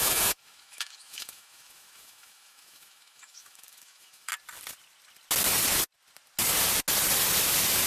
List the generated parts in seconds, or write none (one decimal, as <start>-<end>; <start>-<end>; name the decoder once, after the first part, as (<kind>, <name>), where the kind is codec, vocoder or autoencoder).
0.0-4.3 (autoencoder, DAC-VAE)